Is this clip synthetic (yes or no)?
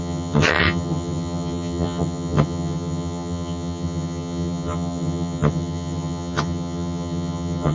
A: yes